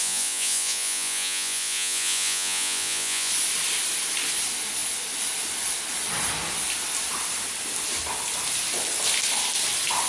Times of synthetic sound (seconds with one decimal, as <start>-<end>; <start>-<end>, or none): 0.0-3.3